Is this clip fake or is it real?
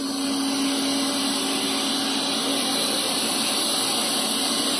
real